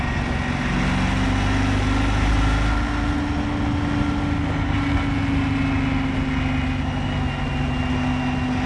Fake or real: real